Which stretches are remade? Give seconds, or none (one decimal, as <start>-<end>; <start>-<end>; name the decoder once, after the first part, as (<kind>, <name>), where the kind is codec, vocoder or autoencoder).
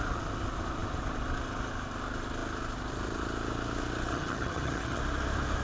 4.1-5.0 (vocoder, HiFi-GAN)